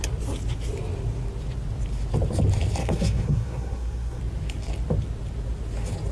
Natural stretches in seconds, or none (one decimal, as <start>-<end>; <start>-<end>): 0.0-2.8; 4.2-6.1